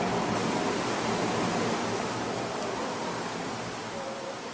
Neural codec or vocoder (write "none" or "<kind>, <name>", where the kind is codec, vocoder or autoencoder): none